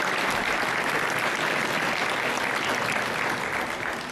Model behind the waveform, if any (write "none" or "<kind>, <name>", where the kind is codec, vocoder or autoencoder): none